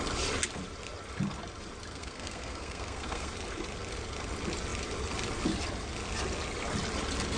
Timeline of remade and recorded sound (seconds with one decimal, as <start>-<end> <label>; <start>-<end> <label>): 0.0-1.9 recorded; 1.9-3.3 remade; 3.3-7.4 recorded

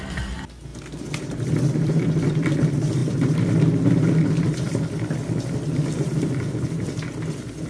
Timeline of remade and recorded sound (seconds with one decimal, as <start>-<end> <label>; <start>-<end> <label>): 0.0-7.7 recorded

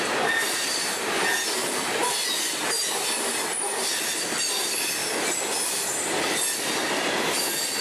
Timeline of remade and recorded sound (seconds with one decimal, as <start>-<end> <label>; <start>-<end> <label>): 0.0-7.8 recorded

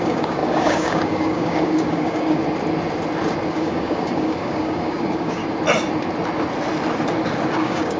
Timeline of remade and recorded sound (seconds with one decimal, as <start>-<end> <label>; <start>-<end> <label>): 0.0-2.4 remade; 2.4-3.5 recorded; 3.5-5.4 remade; 5.4-7.5 recorded; 7.5-8.0 remade

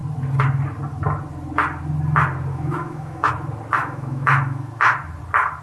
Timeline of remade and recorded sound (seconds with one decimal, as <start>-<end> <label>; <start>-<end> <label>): 0.0-2.5 recorded; 2.5-3.3 remade; 3.3-3.8 recorded; 3.8-4.7 remade; 4.7-5.6 recorded

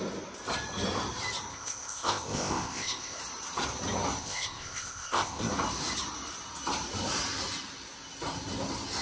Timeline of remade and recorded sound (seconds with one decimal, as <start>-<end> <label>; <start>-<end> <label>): 0.0-1.5 recorded; 1.5-3.2 remade; 3.2-4.2 recorded; 4.2-5.5 remade; 5.5-9.0 recorded